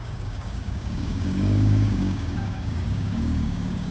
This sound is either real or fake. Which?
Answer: fake